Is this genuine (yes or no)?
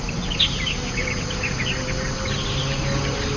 yes